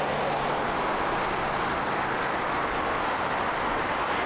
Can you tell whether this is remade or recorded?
recorded